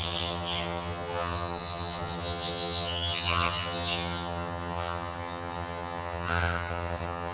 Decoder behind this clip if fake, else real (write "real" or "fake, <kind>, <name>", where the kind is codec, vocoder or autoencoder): fake, vocoder, HiFi-GAN